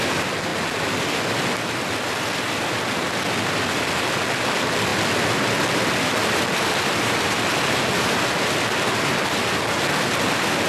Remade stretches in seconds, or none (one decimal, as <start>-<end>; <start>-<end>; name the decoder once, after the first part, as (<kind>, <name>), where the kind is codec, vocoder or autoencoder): none